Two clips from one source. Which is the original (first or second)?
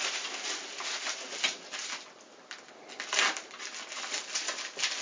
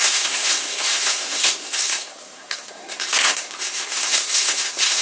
first